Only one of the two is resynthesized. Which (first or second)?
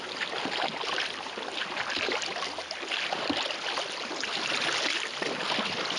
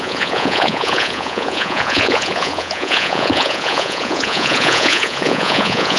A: second